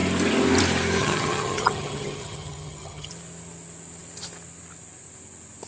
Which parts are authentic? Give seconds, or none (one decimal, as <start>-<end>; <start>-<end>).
0.0-1.0; 3.1-5.7